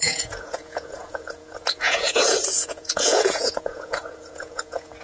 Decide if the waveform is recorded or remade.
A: remade